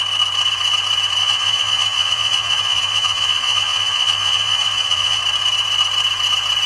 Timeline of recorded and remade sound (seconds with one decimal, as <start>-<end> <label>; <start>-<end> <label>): 0.0-1.2 recorded; 1.2-5.2 remade; 5.2-6.7 recorded